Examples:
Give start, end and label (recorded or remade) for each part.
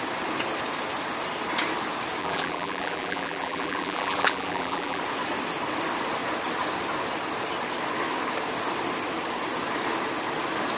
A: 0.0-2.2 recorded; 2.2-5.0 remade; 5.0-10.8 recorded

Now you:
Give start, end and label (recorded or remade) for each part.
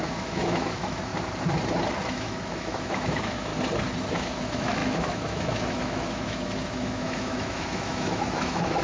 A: 0.0-1.1 remade; 1.1-2.1 recorded; 2.1-3.5 remade; 3.5-4.1 recorded; 4.1-8.8 remade